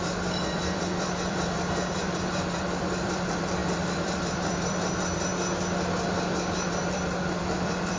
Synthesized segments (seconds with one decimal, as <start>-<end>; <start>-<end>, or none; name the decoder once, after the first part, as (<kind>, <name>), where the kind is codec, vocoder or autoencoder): 0.0-5.3 (vocoder, BigVGAN v2); 6.7-8.0